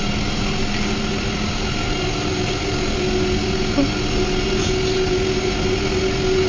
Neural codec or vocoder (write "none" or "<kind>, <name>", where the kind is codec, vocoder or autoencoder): none